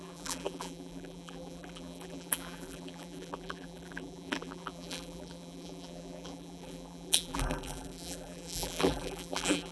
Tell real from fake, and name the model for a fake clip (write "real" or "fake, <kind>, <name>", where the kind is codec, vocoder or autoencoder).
fake, vocoder, BigVGAN v2